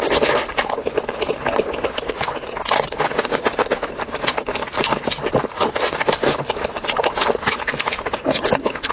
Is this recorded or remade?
recorded